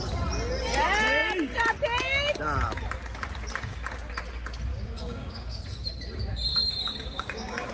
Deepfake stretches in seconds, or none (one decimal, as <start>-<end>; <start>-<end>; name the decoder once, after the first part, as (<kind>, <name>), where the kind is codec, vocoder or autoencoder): 4.7-5.6 (codec, DAC); 6.5-7.7